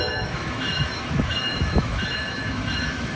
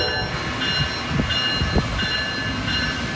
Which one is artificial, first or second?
first